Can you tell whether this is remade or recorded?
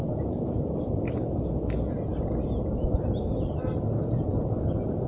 recorded